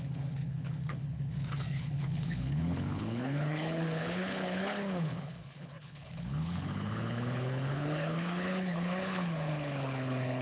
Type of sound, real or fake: fake